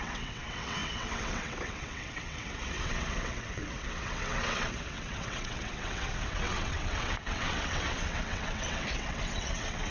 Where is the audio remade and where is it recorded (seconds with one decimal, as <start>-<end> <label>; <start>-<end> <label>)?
0.0-9.9 remade